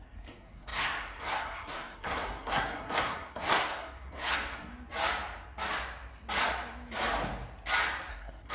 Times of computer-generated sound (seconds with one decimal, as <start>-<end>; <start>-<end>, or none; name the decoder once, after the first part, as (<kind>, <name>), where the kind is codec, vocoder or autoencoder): 0.0-4.7 (codec, SNAC); 8.1-8.5